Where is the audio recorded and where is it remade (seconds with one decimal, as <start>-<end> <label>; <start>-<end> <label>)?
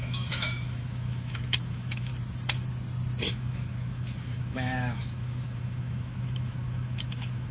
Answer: 0.0-2.1 remade; 2.1-3.3 recorded; 3.3-7.5 remade